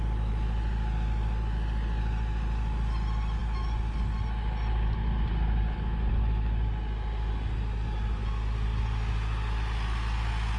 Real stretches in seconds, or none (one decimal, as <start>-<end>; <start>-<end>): 0.0-10.6